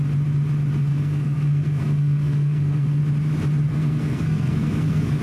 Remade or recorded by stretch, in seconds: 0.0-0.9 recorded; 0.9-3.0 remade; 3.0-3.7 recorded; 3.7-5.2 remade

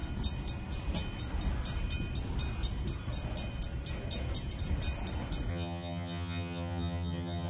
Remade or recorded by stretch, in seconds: 0.0-5.5 recorded; 5.5-7.5 remade

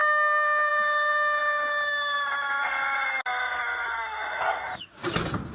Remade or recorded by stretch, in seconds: 0.0-5.5 recorded

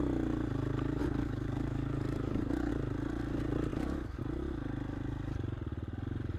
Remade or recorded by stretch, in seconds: 0.0-1.0 recorded; 1.0-2.7 remade; 2.7-3.7 recorded; 3.7-4.2 remade; 4.2-6.4 recorded

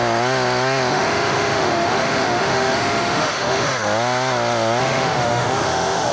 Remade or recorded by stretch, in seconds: 0.0-0.9 recorded; 0.9-3.7 remade; 3.7-4.8 recorded; 4.8-6.1 remade

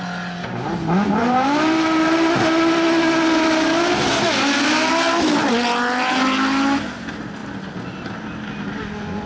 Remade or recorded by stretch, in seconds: 0.0-1.2 recorded; 1.2-2.3 remade; 2.3-9.3 recorded